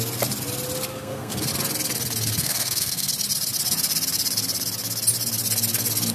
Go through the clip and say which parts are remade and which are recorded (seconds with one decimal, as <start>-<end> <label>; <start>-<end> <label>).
0.0-0.9 recorded; 0.9-1.5 remade; 1.5-2.4 recorded; 2.4-3.1 remade; 3.1-6.1 recorded